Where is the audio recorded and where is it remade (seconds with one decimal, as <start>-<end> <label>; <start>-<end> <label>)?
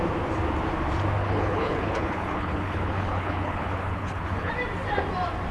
0.0-1.2 recorded; 1.2-4.5 remade; 4.5-5.5 recorded